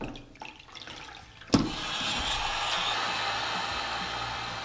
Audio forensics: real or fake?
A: real